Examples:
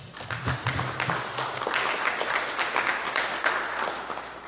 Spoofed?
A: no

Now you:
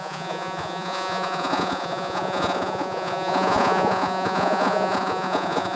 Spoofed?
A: yes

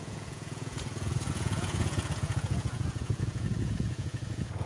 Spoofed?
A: yes